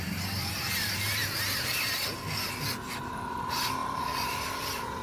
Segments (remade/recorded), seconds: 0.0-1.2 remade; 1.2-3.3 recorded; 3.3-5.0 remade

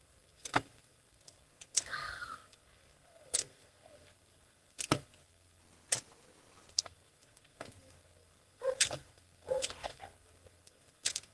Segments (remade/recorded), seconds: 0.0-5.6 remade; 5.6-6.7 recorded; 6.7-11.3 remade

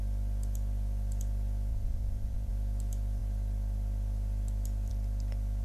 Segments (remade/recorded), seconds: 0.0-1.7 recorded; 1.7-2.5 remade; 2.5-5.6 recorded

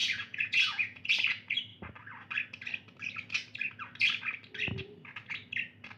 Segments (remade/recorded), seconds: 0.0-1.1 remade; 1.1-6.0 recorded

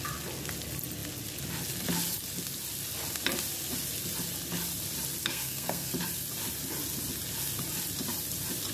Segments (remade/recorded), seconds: 0.0-5.2 recorded; 5.2-5.9 remade; 5.9-8.7 recorded